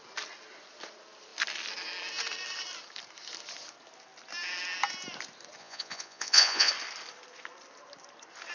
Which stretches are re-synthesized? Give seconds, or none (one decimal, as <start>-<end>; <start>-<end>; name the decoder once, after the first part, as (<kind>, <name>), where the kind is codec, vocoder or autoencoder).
5.6-6.7 (vocoder, Vocos)